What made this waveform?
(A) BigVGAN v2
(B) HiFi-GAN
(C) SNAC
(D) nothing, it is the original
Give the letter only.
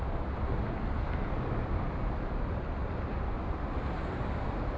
D